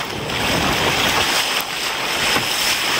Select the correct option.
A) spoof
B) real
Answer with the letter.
B